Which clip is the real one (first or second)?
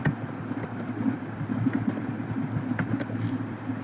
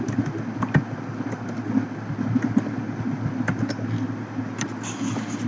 second